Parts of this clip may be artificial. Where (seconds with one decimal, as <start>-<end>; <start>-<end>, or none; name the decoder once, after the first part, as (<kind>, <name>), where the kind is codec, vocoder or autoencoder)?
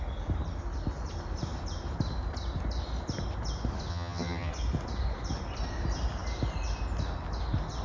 3.9-4.5 (vocoder, HiFi-GAN)